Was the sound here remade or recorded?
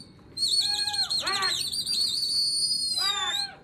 remade